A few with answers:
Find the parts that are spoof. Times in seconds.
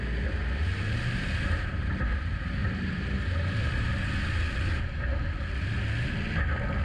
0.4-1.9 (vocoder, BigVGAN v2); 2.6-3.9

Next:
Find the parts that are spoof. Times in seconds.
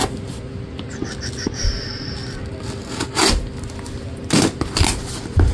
none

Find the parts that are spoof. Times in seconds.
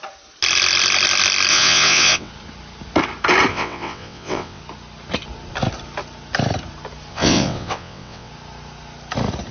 1.5-2.3 (vocoder, WaveNeXt); 3.5-4.6; 7.1-8.3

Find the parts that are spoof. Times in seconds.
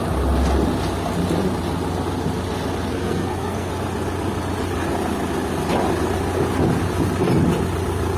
2.9-3.7 (codec, SNAC)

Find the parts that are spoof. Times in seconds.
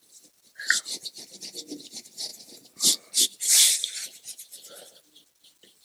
none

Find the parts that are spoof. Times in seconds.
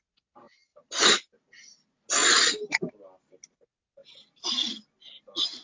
none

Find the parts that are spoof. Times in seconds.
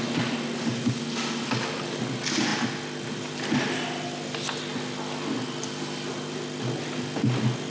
none